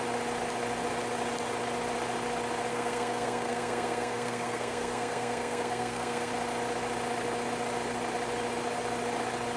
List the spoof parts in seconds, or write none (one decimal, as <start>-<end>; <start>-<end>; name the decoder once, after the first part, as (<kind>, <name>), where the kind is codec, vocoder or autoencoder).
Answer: 2.7-6.3 (codec, SNAC)